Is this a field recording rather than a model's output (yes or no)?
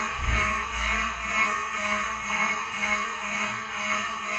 no